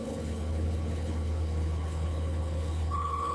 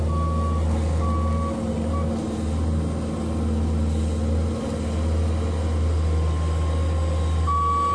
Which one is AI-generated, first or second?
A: first